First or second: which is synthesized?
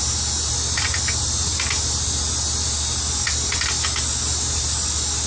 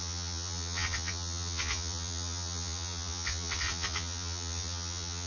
second